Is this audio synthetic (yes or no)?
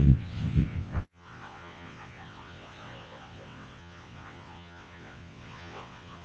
yes